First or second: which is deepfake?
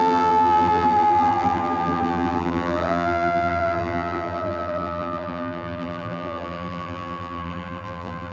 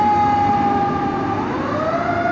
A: first